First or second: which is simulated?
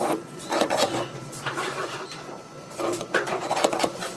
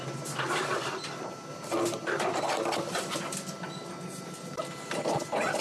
first